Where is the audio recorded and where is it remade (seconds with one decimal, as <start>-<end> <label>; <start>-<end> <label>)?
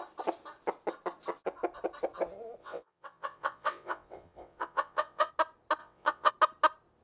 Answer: 0.0-2.6 recorded; 2.6-5.3 remade; 5.3-5.8 recorded; 5.8-6.3 remade; 6.3-7.0 recorded